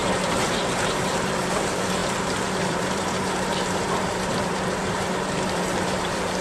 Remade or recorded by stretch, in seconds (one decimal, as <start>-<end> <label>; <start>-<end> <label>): 0.0-6.4 remade